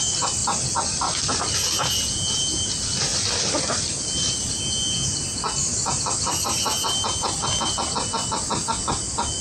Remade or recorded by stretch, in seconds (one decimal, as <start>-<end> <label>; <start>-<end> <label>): 0.0-9.4 recorded